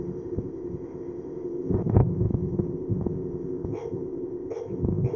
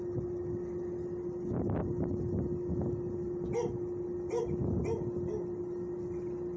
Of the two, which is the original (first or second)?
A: second